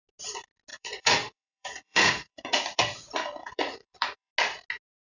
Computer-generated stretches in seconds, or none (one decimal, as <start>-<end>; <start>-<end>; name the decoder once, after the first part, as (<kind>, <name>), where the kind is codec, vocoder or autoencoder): 0.7-2.8 (vocoder, Vocos); 3.4-4.3